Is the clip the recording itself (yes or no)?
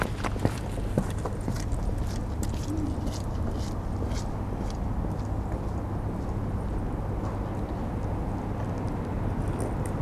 yes